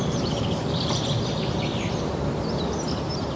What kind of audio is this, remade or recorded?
recorded